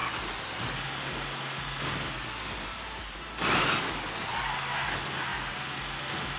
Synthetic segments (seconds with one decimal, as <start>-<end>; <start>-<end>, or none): none